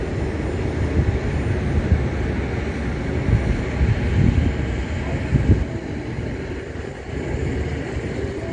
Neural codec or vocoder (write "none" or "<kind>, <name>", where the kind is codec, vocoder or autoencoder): none